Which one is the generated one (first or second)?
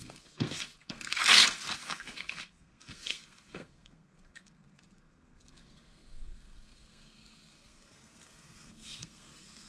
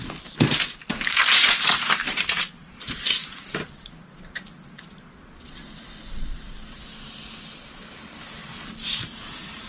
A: first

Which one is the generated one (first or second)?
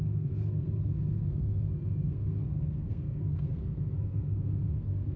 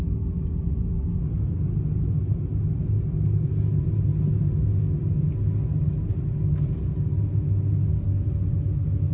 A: first